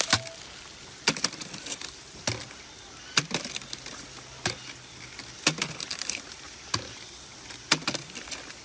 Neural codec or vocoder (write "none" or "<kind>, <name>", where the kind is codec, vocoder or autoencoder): none